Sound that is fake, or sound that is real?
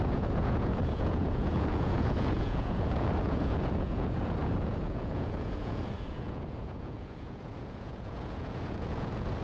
fake